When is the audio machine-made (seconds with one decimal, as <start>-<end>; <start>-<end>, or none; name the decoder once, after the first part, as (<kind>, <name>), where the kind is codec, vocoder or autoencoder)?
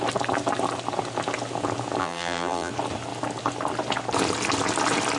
2.0-2.7 (vocoder, BigVGAN v2)